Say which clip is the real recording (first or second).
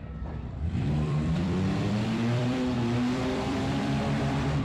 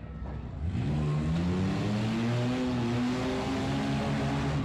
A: second